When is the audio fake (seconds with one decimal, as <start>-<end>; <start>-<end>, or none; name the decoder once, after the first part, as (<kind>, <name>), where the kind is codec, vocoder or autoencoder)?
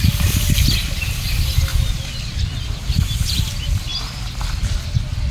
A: none